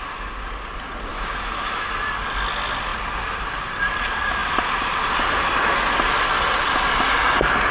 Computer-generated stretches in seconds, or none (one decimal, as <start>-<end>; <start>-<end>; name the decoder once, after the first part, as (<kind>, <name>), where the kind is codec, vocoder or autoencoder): 1.1-1.9 (autoencoder, DAC-VAE)